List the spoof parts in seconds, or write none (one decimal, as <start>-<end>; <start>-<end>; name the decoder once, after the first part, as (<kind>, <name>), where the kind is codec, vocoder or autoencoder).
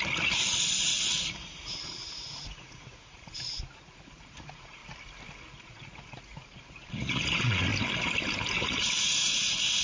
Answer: 0.0-4.8 (vocoder, Vocos); 5.5-7.7; 8.6-9.8